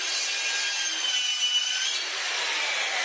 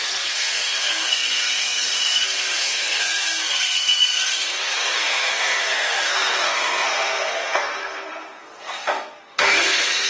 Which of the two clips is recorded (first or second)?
first